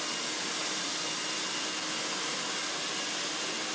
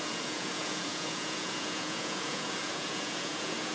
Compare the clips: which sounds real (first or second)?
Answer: first